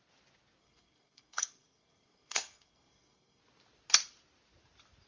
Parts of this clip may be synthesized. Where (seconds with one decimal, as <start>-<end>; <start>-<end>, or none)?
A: 0.6-3.4